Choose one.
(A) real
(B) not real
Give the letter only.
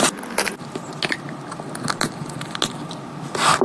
A